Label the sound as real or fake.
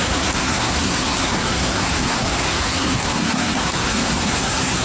fake